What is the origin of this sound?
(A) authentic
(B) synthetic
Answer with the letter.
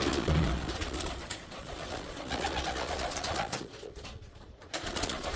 B